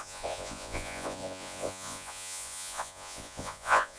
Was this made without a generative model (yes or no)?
no